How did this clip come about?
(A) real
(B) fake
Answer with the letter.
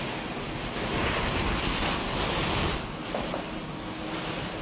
A